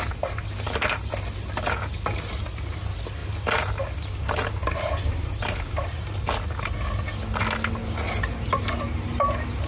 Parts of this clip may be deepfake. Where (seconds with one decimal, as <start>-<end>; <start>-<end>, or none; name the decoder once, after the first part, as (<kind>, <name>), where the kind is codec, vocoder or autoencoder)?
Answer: none